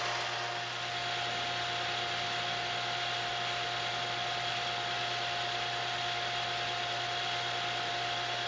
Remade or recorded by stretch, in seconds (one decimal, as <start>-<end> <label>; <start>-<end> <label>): 0.0-8.5 recorded